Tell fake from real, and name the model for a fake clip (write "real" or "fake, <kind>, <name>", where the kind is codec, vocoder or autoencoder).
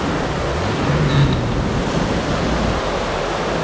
real